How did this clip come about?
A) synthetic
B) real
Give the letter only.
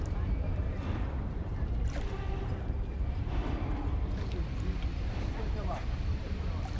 A